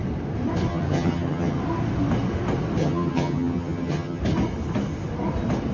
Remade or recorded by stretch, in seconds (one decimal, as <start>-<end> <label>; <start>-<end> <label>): 0.0-0.7 recorded; 0.7-1.6 remade; 1.6-2.8 recorded; 2.8-4.2 remade; 4.2-5.7 recorded